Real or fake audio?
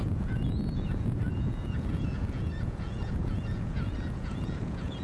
fake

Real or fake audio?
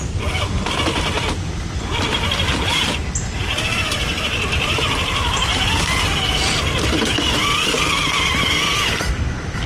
real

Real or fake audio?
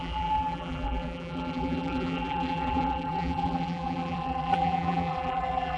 fake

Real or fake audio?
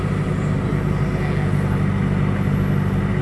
real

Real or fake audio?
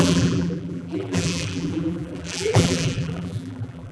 fake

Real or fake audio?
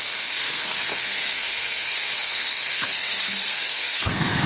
fake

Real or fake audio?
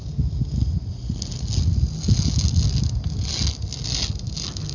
real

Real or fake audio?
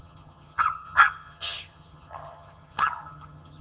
fake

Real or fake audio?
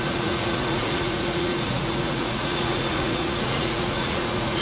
fake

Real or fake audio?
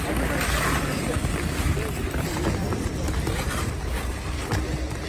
real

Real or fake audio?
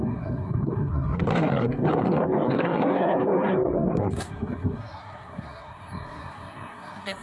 fake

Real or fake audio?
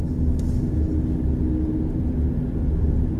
real